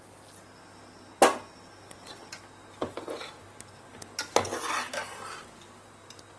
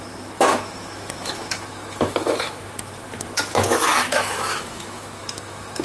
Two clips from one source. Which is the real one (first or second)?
first